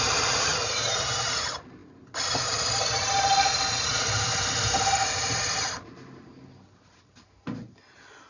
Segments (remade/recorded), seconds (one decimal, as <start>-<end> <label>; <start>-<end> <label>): 0.0-8.3 recorded